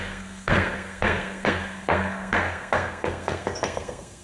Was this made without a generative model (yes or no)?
no